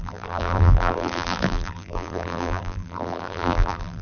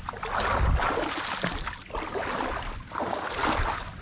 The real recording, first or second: second